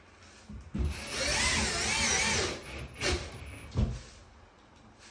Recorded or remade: recorded